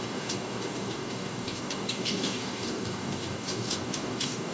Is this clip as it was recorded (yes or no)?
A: no